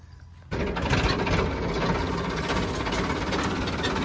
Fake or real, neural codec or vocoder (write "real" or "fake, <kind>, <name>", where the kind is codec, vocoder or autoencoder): real